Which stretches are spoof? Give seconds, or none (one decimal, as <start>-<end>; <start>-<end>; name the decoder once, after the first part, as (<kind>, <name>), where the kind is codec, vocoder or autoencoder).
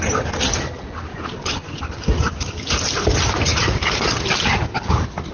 1.1-1.8 (vocoder, Vocos)